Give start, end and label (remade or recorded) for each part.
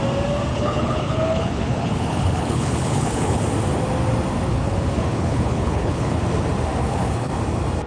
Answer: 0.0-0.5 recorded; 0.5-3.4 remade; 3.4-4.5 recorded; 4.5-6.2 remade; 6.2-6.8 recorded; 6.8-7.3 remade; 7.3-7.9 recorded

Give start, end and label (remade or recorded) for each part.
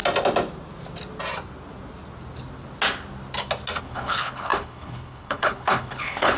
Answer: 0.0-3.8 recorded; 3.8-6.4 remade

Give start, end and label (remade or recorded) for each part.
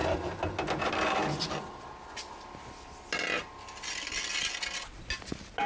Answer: 0.0-5.7 recorded